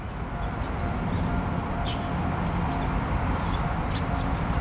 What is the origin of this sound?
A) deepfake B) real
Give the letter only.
B